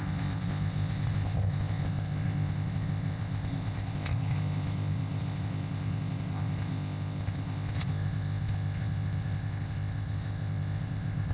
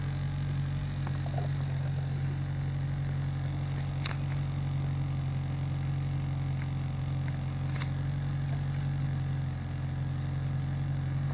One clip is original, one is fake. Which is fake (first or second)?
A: first